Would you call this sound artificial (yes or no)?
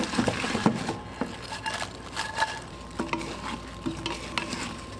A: no